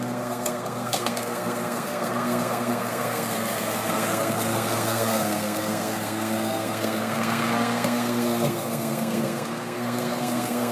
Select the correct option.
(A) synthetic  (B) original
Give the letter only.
A